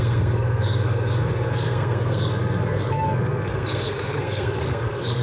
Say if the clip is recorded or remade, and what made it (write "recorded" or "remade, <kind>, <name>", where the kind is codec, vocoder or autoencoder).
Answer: remade, codec, SNAC